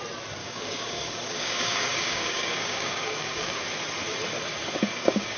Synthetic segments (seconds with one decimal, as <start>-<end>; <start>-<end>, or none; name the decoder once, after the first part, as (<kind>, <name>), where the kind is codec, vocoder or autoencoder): 0.4-3.6 (codec, DAC); 4.6-5.4